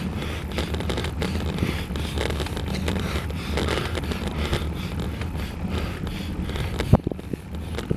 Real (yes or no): yes